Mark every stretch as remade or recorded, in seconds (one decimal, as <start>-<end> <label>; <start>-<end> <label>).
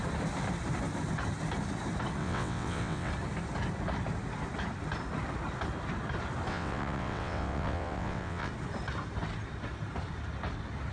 0.0-2.2 recorded; 2.2-3.1 remade; 3.1-6.5 recorded; 6.5-8.5 remade; 8.5-10.9 recorded